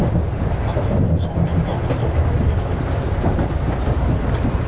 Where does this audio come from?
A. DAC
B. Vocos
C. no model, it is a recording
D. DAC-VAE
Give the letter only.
C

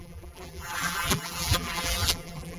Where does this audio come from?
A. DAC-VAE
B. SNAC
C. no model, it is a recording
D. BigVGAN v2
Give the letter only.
D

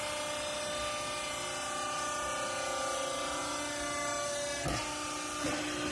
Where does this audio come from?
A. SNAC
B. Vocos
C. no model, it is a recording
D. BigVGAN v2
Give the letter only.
C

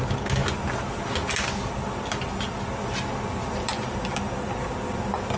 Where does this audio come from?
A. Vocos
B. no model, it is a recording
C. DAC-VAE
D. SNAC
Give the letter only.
B